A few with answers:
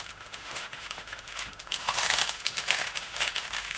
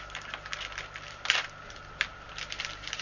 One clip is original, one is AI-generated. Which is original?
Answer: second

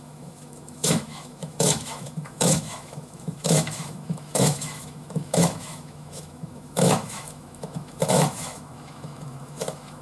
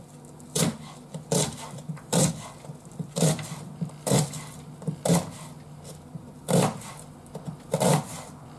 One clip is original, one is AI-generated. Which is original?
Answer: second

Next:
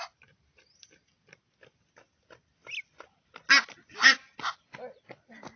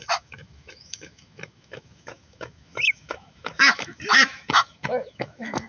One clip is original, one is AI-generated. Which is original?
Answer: first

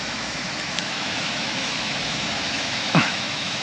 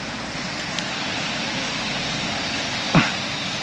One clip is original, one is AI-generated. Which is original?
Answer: second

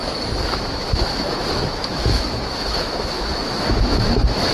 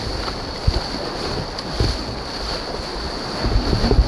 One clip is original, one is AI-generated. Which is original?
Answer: second